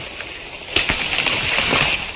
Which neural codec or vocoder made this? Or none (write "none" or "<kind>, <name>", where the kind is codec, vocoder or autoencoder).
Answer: none